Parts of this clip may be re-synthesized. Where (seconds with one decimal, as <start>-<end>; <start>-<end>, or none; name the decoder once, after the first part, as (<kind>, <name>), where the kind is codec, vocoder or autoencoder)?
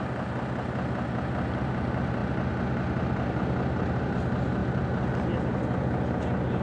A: none